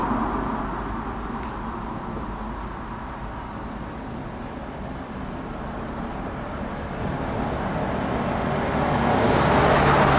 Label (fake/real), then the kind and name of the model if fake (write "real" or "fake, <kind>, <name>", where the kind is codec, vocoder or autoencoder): real